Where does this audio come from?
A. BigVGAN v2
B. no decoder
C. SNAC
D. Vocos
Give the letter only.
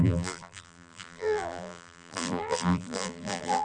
A